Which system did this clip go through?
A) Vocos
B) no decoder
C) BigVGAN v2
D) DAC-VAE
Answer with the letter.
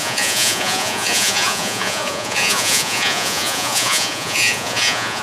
A